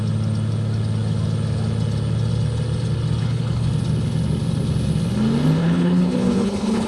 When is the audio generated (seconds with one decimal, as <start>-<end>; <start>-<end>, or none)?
3.2-3.7; 5.6-6.9